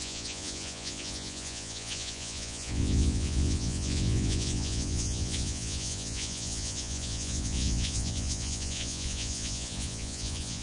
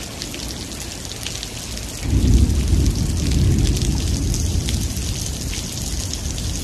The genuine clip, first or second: second